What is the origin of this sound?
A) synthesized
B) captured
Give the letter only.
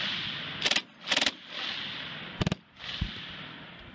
B